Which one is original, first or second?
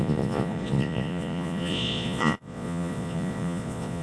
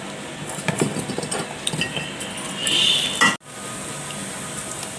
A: second